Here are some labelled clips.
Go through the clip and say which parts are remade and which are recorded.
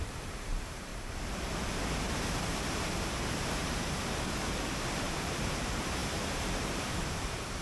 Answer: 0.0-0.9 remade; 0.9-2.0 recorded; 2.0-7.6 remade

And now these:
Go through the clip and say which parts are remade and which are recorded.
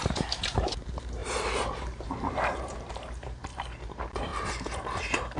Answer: 0.0-5.4 remade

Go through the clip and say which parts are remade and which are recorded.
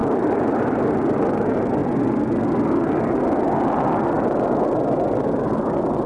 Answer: 0.0-0.9 remade; 0.9-6.1 recorded